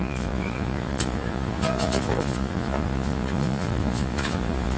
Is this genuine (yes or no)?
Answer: no